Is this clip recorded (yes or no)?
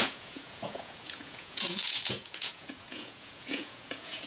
no